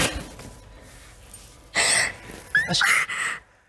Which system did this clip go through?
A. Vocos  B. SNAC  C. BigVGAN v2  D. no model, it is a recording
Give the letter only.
D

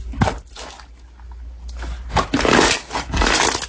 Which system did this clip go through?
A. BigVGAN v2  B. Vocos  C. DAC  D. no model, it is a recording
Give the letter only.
D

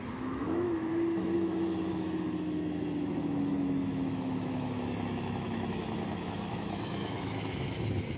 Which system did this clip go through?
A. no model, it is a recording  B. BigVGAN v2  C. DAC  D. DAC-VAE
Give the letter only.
D